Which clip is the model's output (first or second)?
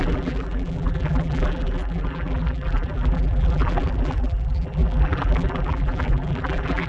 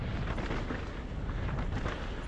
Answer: first